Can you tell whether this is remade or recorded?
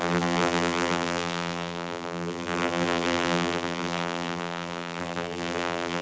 remade